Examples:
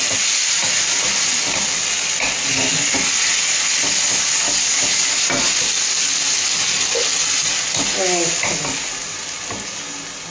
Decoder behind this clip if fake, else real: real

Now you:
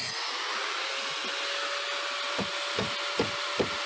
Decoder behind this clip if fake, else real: real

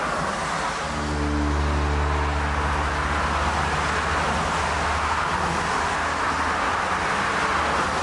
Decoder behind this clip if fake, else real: real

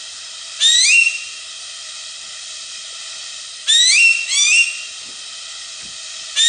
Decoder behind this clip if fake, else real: real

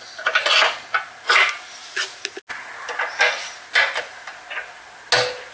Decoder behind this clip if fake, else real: real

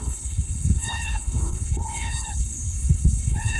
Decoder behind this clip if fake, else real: fake, codec, HILCodec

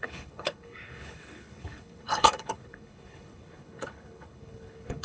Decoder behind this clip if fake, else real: fake, codec, HILCodec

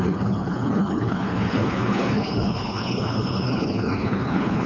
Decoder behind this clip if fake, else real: fake, codec, HILCodec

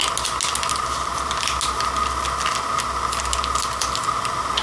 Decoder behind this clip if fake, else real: real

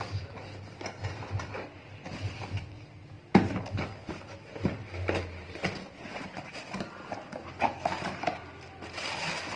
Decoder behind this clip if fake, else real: real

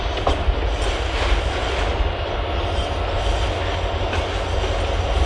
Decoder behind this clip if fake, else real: real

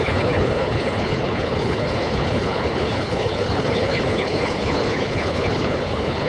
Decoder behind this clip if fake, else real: fake, codec, HILCodec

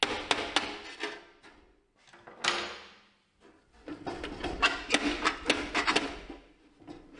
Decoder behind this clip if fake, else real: real